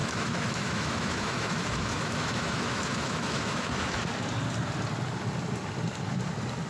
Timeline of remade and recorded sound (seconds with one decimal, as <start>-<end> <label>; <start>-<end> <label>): 0.0-4.0 remade; 4.0-6.7 recorded